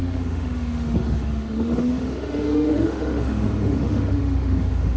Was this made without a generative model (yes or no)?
no